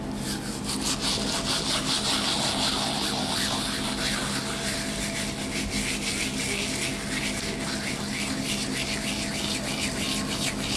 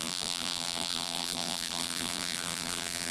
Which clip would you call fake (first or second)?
second